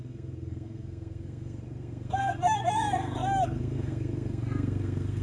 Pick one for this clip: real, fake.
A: fake